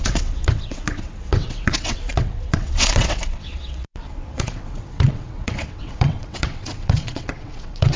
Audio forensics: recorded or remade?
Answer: remade